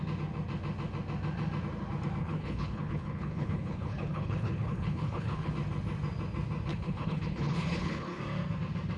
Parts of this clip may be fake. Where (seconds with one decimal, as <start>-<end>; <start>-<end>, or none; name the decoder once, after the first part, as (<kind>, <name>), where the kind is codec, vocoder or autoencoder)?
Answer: 2.2-5.5 (codec, HILCodec); 6.7-8.2